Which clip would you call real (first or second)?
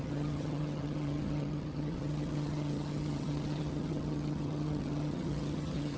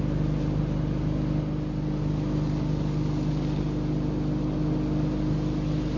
second